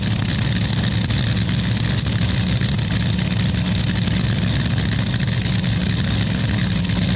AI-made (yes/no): no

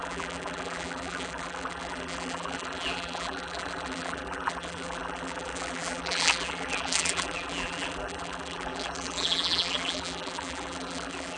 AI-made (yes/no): yes